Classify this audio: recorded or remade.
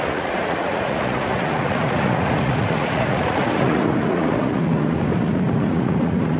remade